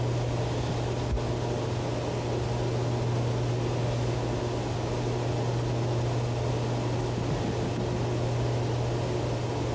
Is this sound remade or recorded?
recorded